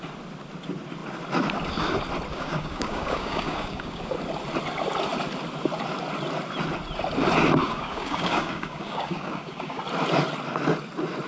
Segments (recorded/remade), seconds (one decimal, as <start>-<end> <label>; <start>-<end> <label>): 0.0-2.3 recorded; 2.3-4.0 remade; 4.0-7.6 recorded; 7.6-9.8 remade; 9.8-11.3 recorded